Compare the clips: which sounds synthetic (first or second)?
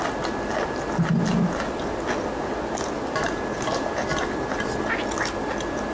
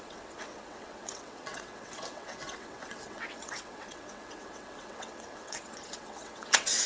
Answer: second